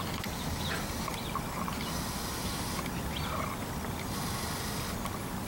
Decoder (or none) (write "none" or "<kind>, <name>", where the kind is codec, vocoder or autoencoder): none